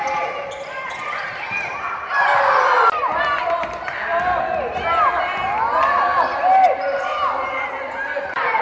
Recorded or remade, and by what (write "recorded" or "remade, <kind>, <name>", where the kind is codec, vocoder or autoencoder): recorded